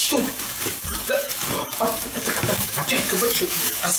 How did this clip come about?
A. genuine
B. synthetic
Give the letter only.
B